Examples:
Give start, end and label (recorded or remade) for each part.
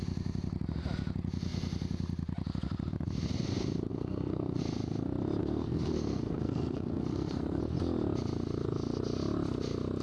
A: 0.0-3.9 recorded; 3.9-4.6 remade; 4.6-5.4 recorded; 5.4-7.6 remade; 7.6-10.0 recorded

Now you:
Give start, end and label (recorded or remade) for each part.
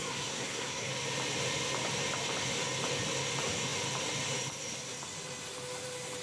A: 0.0-0.9 remade; 0.9-6.2 recorded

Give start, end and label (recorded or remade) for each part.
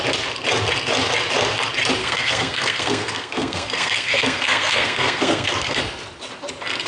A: 0.0-2.0 recorded; 2.0-5.8 remade; 5.8-6.9 recorded